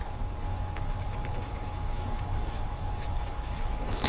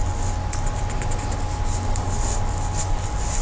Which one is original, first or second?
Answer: second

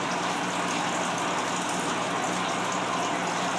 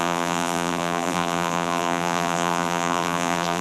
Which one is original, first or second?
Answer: first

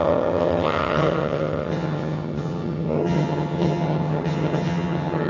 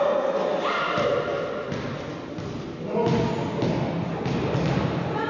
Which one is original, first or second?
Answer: second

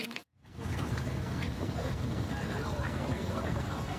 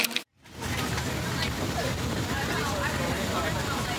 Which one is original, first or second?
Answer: second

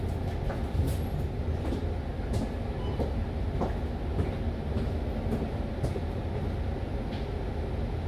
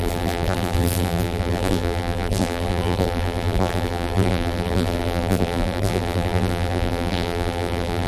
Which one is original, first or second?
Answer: first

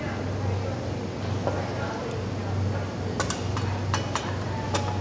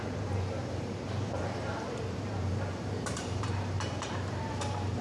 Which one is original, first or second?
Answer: first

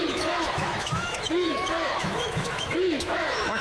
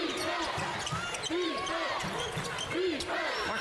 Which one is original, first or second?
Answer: second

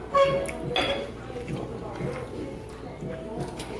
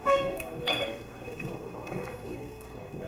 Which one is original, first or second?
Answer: first